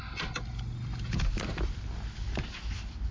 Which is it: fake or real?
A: real